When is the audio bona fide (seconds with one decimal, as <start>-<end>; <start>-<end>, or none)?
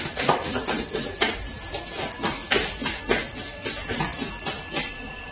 0.0-0.5; 1.8-5.3